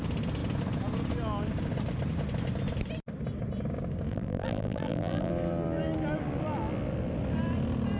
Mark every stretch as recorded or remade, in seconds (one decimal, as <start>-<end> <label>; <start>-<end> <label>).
0.0-4.1 recorded; 4.1-5.3 remade; 5.3-8.0 recorded